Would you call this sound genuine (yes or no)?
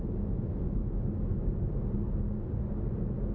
yes